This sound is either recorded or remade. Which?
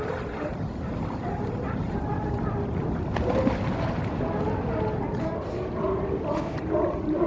recorded